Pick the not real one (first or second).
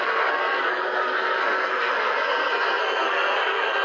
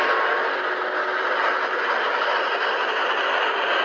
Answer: first